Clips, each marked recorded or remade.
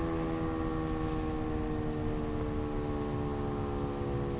recorded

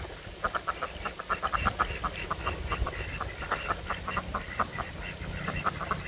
recorded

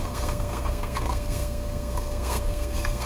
remade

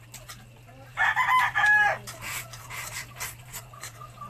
recorded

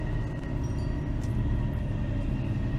recorded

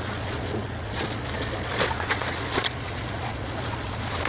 remade